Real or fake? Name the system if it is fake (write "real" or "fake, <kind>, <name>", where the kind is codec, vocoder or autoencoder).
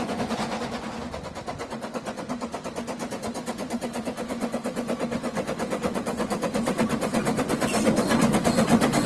fake, vocoder, Vocos